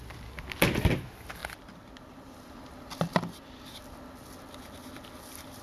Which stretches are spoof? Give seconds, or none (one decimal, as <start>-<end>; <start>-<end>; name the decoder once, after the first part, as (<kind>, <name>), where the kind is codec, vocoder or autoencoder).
none